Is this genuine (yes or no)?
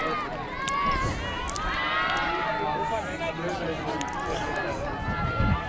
yes